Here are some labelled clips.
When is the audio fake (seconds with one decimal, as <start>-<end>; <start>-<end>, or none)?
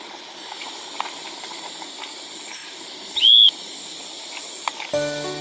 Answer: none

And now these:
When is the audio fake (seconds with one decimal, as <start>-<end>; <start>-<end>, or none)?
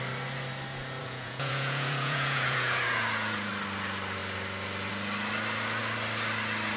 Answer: 1.0-3.5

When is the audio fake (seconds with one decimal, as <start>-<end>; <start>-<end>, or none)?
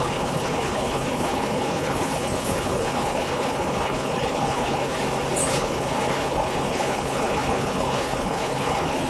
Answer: 0.0-5.0; 5.5-9.1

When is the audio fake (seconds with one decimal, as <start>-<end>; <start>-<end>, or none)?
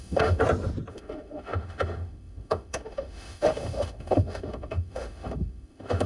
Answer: 0.0-0.4; 0.9-6.1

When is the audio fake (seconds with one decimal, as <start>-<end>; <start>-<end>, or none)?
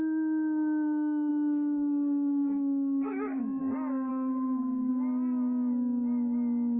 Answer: 1.3-3.6; 4.1-4.9